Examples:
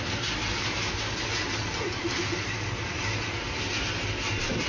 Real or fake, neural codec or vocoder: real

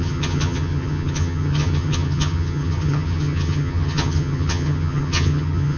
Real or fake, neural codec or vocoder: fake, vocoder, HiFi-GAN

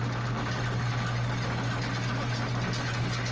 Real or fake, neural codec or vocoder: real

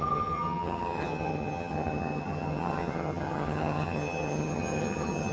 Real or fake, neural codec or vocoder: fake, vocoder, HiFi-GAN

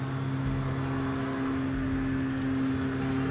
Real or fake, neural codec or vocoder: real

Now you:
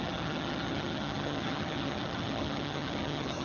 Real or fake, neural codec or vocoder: fake, vocoder, HiFi-GAN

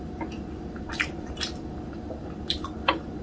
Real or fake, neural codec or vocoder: real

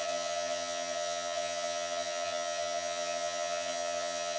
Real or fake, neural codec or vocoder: fake, vocoder, HiFi-GAN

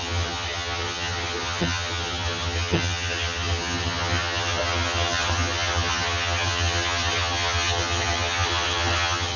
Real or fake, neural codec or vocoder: fake, vocoder, HiFi-GAN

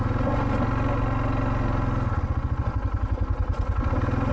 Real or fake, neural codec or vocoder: real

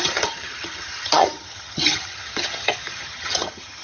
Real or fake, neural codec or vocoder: fake, vocoder, HiFi-GAN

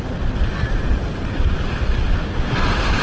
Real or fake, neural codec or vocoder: real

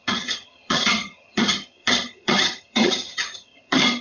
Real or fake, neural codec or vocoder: fake, vocoder, HiFi-GAN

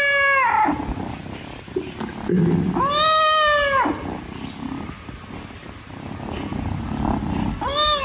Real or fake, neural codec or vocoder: real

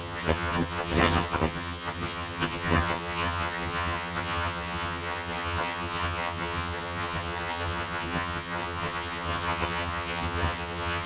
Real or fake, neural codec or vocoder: fake, vocoder, HiFi-GAN